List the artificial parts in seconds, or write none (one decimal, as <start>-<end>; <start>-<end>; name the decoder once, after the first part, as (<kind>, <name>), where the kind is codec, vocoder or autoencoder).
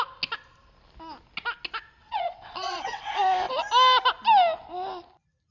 2.0-3.2 (vocoder, WaveNeXt)